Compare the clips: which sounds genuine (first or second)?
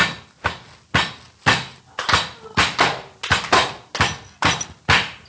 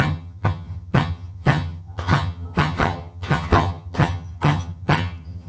first